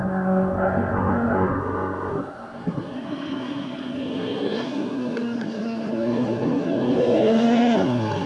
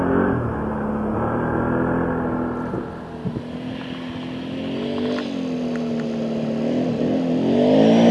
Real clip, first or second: second